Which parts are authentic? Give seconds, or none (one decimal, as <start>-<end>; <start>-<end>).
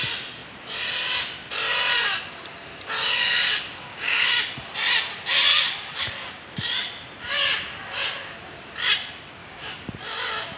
0.0-3.0; 4.5-5.5; 6.1-9.4; 9.9-10.6